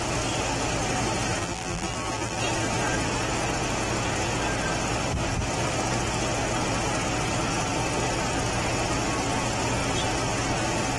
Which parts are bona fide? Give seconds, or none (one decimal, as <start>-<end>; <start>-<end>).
0.0-1.4; 2.4-11.0